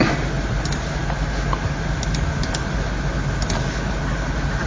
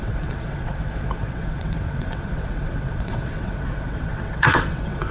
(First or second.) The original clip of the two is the first